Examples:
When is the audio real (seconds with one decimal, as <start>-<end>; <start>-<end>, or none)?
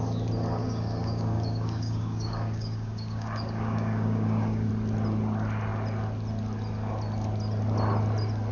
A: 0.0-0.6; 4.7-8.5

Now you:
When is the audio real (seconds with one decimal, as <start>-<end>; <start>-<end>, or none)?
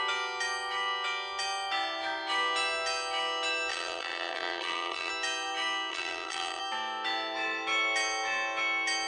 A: 0.0-3.7; 5.1-5.9; 6.6-9.1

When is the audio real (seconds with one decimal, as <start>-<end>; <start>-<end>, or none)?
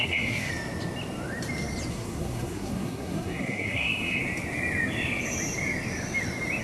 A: 0.5-1.9; 4.2-6.6